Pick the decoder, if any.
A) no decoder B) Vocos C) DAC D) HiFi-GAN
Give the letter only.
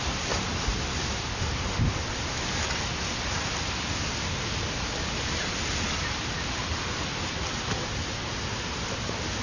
A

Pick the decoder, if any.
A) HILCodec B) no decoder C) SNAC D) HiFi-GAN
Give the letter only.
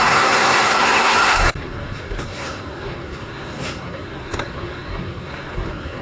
C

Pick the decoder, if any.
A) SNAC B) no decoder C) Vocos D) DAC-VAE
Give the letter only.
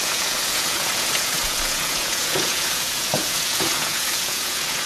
C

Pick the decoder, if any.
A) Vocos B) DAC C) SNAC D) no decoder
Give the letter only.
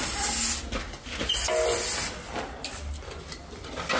D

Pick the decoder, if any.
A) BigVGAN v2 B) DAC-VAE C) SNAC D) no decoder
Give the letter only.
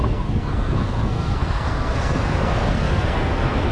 C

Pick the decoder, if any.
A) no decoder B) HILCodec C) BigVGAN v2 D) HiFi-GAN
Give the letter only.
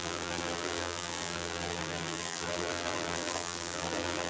C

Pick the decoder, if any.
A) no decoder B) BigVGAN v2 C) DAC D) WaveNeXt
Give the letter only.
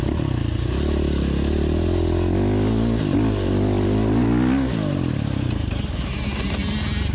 A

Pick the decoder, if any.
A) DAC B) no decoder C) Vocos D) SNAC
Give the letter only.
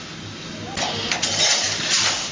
B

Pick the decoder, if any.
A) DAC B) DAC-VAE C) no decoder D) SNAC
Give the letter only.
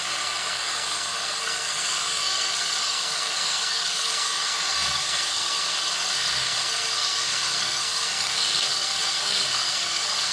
D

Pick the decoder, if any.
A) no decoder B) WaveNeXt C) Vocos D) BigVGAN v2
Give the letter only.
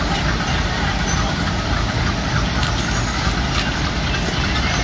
D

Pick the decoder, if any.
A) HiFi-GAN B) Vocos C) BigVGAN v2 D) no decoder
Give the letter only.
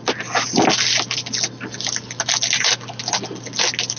D